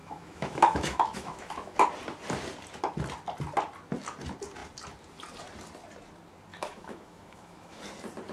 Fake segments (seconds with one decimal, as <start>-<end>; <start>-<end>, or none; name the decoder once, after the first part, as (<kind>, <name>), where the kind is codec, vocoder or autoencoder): 0.0-1.8 (autoencoder, DAC-VAE); 6.5-7.8